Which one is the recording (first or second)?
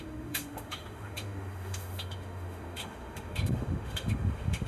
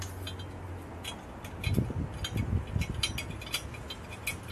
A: second